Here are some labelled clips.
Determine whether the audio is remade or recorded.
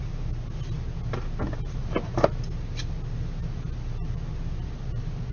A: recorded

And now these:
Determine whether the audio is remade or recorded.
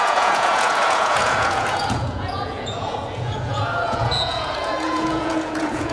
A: remade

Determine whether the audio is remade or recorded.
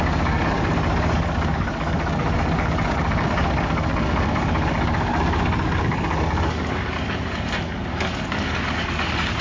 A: remade